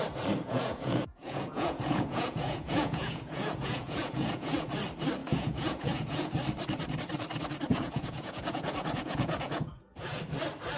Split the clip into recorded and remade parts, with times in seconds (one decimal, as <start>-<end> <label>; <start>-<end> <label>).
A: 0.0-0.4 recorded; 0.4-4.7 remade; 4.7-5.2 recorded; 5.2-6.3 remade; 6.3-7.7 recorded; 7.7-10.2 remade; 10.2-10.8 recorded